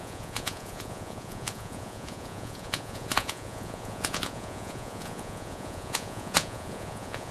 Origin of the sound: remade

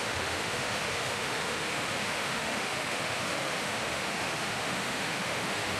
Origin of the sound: remade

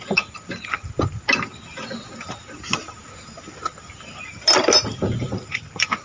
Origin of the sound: recorded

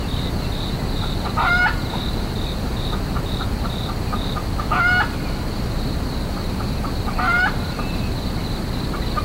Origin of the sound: recorded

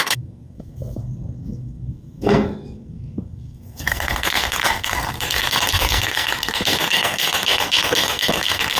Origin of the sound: remade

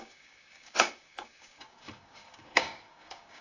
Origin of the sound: remade